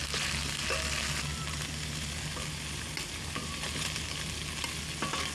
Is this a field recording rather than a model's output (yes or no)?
yes